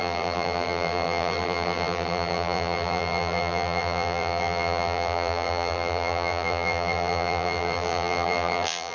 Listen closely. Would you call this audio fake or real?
fake